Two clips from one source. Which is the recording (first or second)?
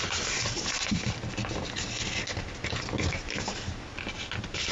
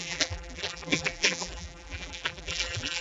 first